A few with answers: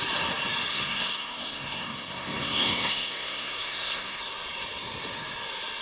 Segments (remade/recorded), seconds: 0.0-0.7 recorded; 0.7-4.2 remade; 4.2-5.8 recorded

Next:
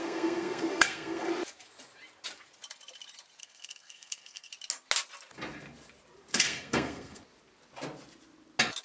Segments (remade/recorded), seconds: 0.0-1.3 remade; 1.3-3.4 recorded; 3.4-4.5 remade; 4.5-6.3 recorded; 6.3-7.2 remade; 7.2-8.8 recorded

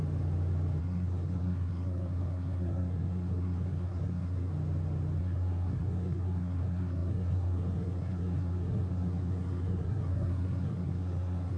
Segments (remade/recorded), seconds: 0.0-0.8 recorded; 0.8-4.5 remade; 4.5-5.2 recorded; 5.2-11.6 remade